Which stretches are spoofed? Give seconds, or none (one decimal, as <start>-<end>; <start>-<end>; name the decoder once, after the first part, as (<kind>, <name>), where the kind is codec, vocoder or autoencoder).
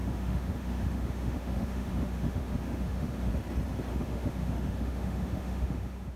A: 0.0-3.3 (autoencoder, DAC-VAE); 3.9-6.2